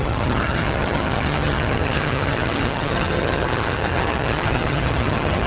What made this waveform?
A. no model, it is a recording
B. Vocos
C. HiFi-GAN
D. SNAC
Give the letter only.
C